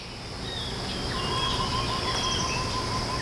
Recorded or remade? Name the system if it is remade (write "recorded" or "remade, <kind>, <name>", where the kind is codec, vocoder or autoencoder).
recorded